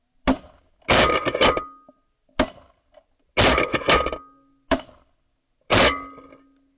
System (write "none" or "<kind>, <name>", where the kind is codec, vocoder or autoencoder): none